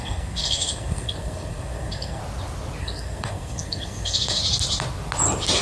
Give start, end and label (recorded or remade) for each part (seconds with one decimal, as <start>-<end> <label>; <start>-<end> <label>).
0.0-2.2 remade; 2.2-2.8 recorded; 2.8-4.4 remade; 4.4-5.6 recorded